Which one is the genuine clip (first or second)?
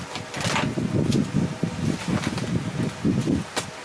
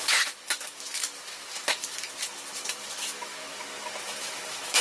first